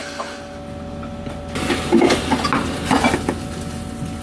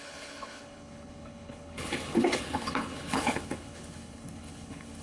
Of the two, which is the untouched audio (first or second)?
first